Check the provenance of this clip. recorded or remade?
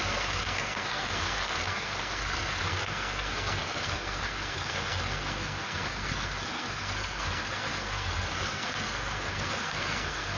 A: remade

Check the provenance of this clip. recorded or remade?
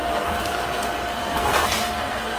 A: remade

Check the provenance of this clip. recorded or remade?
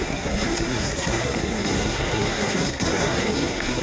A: remade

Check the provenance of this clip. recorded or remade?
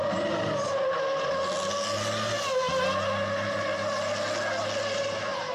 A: recorded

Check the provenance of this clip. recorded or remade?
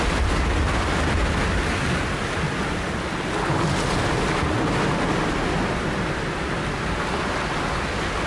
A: recorded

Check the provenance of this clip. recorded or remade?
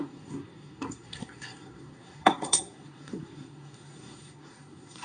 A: remade